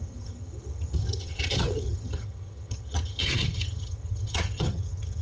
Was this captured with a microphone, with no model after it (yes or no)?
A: no